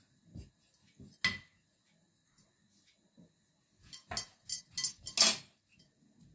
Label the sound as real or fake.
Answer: real